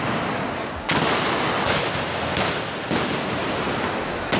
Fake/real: real